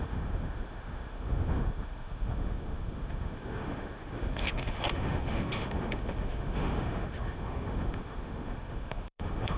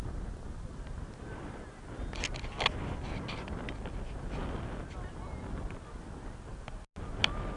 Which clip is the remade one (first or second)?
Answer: first